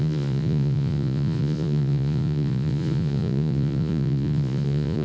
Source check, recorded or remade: remade